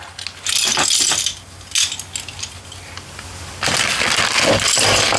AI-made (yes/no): no